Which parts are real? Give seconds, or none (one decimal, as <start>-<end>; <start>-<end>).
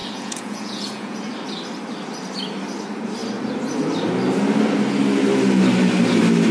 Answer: 1.2-6.5